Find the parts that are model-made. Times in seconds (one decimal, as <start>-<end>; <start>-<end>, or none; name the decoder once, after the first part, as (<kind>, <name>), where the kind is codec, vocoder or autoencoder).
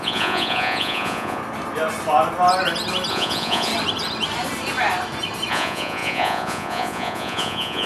0.0-1.4 (vocoder, Vocos); 3.1-3.7; 5.5-7.9